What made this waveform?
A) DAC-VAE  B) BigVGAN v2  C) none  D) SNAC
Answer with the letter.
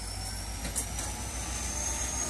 C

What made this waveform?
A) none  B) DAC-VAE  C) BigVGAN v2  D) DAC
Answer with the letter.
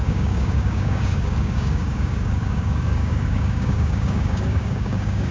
D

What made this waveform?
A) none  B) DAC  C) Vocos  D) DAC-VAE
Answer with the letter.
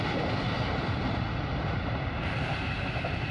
A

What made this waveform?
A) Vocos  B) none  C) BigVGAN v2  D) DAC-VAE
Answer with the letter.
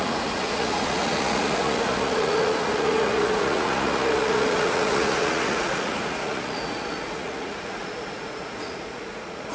A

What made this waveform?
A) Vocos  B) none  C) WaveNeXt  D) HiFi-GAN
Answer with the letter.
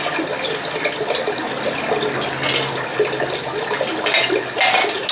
B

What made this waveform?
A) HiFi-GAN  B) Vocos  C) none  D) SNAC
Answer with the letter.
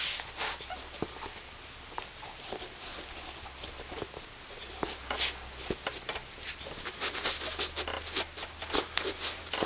C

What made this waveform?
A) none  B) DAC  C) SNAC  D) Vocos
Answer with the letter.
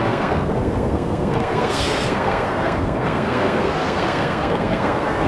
C